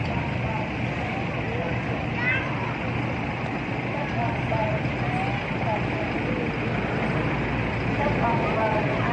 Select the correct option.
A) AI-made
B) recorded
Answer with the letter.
B